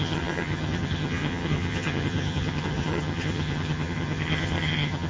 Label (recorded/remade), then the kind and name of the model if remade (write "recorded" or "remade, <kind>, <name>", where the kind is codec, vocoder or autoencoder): remade, vocoder, HiFi-GAN